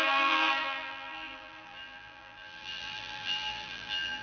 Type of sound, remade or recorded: remade